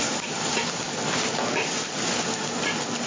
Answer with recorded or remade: recorded